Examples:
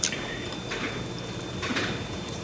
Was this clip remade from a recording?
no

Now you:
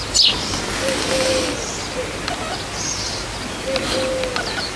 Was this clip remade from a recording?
no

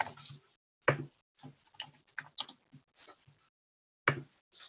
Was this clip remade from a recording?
no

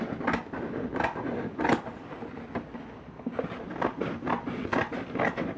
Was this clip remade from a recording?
no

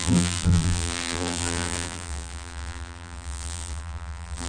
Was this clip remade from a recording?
yes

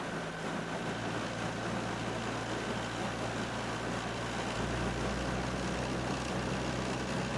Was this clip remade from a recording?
no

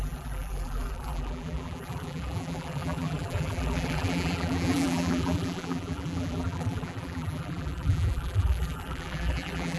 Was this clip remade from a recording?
yes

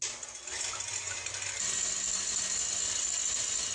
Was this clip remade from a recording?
no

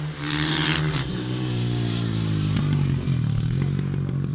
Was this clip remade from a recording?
yes